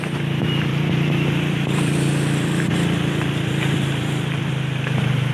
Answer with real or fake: fake